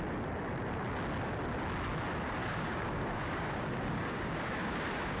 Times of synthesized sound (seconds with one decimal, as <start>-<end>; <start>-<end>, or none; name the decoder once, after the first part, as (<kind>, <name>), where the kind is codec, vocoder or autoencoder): 2.4-5.2 (codec, DAC)